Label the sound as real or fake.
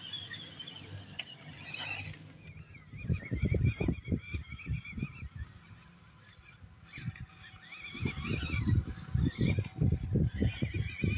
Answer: real